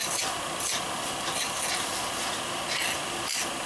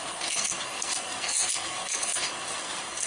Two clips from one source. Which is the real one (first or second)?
first